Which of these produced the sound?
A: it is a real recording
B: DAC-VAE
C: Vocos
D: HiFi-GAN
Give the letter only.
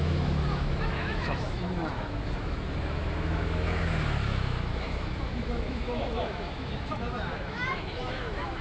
B